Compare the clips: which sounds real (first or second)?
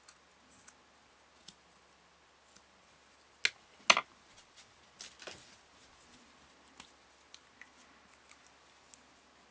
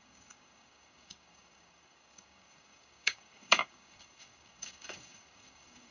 first